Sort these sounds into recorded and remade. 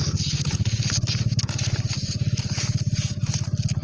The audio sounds recorded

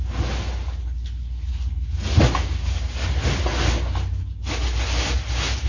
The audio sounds recorded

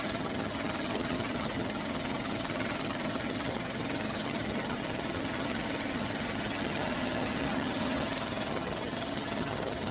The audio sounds remade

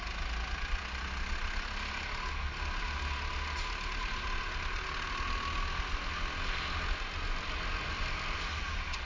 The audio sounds recorded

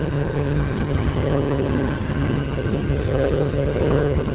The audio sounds remade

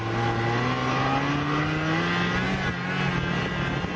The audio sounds recorded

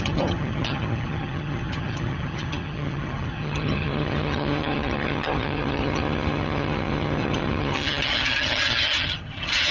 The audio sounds remade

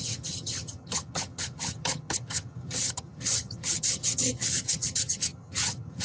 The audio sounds remade